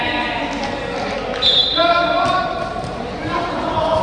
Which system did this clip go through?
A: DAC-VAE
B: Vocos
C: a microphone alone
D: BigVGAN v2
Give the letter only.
D